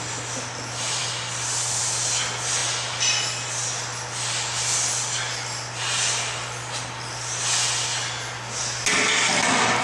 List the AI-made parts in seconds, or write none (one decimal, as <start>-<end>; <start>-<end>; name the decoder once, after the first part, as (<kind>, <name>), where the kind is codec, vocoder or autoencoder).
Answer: none